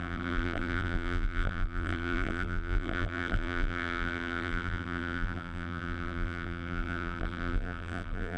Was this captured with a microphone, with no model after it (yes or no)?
no